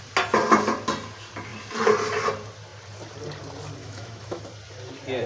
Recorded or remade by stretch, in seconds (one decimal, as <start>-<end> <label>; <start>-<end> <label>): 0.0-3.8 recorded; 3.8-4.4 remade; 4.4-5.3 recorded